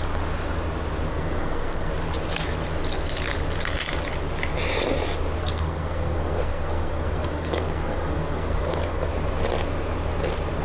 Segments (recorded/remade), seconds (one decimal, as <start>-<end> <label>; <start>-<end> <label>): 0.0-1.1 recorded; 1.1-1.9 remade; 1.9-5.4 recorded; 5.4-9.1 remade; 9.1-10.6 recorded

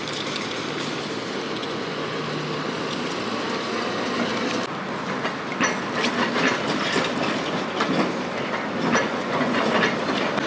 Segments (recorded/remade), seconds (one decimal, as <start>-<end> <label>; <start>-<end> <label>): 0.0-1.6 recorded; 1.6-2.2 remade; 2.2-9.0 recorded; 9.0-9.6 remade; 9.6-10.5 recorded

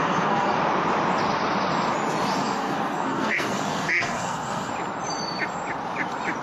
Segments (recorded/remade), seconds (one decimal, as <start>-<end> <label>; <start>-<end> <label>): 0.0-0.6 remade; 0.6-2.4 recorded; 2.4-4.7 remade; 4.7-6.4 recorded

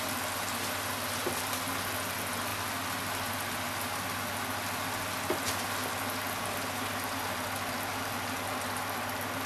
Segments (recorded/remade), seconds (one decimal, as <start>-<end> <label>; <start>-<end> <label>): 0.0-9.5 recorded

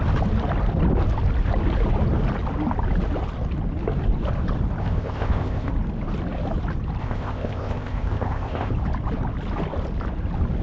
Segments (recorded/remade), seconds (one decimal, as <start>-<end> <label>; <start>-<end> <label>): 0.0-4.8 recorded; 4.8-5.7 remade; 5.7-7.0 recorded; 7.0-8.7 remade; 8.7-10.6 recorded

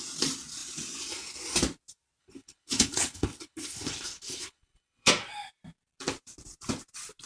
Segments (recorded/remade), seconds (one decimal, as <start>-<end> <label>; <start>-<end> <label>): 0.0-2.2 recorded; 2.2-5.1 remade; 5.1-7.3 recorded

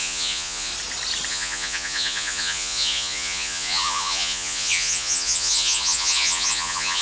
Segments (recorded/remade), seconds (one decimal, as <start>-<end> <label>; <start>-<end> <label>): 0.0-0.7 remade; 0.7-1.3 recorded; 1.3-7.0 remade